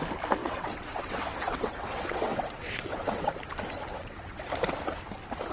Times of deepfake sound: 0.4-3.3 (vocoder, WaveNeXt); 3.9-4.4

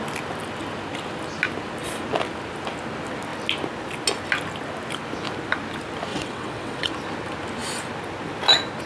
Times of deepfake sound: 6.1-6.9 (vocoder, WaveNeXt)